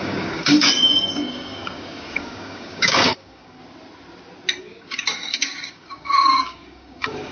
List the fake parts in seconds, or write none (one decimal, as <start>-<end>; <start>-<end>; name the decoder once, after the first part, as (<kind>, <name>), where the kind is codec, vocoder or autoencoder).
0.0-3.6 (codec, DAC); 4.6-7.3